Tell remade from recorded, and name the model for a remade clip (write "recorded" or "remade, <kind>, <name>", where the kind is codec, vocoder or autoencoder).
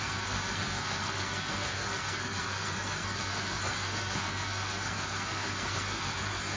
remade, codec, SNAC